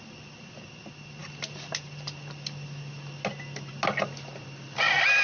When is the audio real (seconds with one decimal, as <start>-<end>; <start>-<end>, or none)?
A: 0.0-5.2